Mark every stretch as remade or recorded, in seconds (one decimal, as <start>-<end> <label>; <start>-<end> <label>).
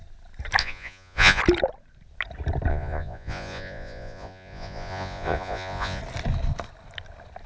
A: 0.0-0.6 recorded; 0.6-1.4 remade; 1.4-2.7 recorded; 2.7-6.0 remade; 6.0-7.5 recorded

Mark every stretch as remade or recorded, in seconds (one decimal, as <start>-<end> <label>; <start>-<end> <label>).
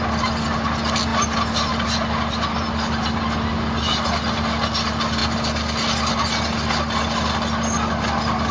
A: 0.0-8.5 recorded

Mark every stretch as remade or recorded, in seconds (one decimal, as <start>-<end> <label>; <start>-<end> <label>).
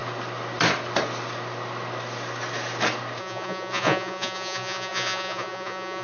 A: 0.0-3.2 recorded; 3.2-6.0 remade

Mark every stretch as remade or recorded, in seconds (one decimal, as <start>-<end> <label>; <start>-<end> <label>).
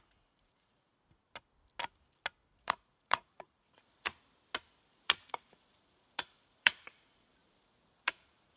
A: 0.0-0.9 remade; 0.9-2.5 recorded; 2.5-4.1 remade; 4.1-4.9 recorded; 4.9-8.6 remade